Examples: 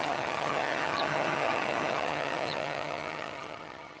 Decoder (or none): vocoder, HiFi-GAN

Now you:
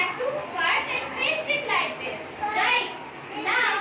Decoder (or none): none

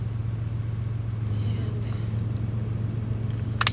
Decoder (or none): none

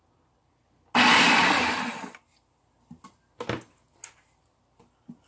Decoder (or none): none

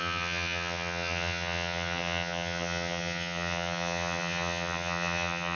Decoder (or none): vocoder, HiFi-GAN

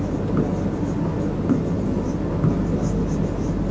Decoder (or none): none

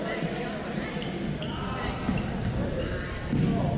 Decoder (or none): none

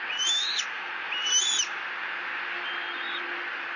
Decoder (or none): none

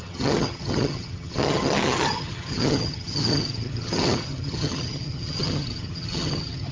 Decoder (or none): vocoder, HiFi-GAN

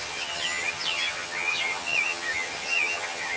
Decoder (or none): vocoder, HiFi-GAN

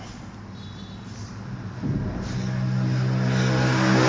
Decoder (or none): none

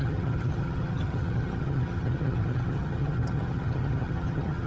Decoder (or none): vocoder, HiFi-GAN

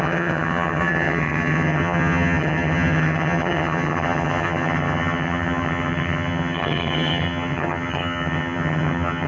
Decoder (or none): vocoder, HiFi-GAN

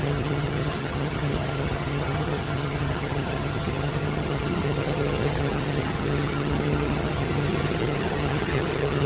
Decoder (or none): vocoder, HiFi-GAN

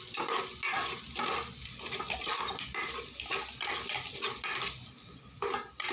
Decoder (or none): none